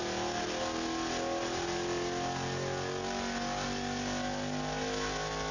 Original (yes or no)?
yes